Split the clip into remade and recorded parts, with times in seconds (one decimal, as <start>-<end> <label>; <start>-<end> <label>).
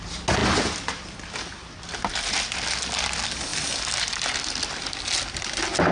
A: 0.0-5.9 recorded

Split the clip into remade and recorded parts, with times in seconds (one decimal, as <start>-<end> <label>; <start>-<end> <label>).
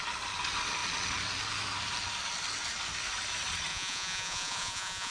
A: 0.0-3.7 recorded; 3.7-5.1 remade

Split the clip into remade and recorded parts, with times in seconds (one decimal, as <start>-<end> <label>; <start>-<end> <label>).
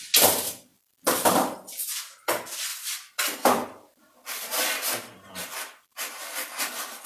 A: 0.0-0.7 recorded; 0.7-1.3 remade; 1.3-2.7 recorded; 2.7-6.6 remade; 6.6-7.1 recorded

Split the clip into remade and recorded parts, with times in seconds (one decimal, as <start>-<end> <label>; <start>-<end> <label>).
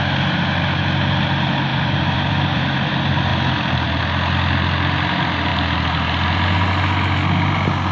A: 0.0-1.7 recorded; 1.7-2.9 remade; 2.9-7.9 recorded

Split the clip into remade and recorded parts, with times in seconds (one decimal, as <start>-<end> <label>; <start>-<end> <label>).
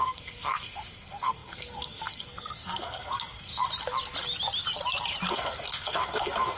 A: 0.0-3.5 remade; 3.5-5.3 recorded; 5.3-6.6 remade